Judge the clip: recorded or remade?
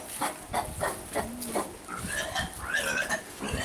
recorded